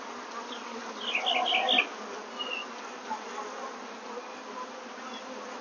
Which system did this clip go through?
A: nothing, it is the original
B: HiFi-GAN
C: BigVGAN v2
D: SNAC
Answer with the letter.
A